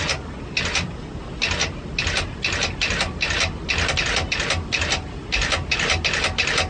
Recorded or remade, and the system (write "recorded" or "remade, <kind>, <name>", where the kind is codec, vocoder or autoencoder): recorded